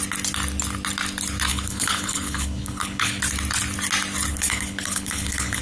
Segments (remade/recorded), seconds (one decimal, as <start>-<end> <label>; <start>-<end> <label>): 0.0-1.5 recorded; 1.5-3.2 remade; 3.2-4.3 recorded; 4.3-5.6 remade